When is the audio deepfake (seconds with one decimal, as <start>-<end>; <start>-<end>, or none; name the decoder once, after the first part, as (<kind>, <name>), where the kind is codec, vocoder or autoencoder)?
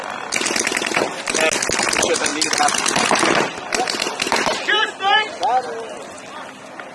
none